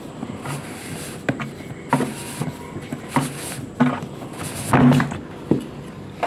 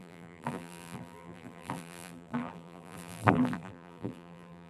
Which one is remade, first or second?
second